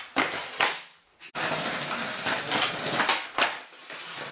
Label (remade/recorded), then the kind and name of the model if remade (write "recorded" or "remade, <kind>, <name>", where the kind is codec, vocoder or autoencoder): recorded